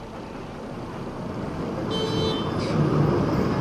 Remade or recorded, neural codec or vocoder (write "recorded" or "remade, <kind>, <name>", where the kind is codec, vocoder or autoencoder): recorded